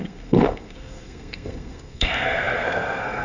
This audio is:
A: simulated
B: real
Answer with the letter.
A